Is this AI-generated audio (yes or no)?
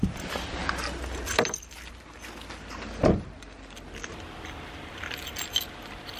no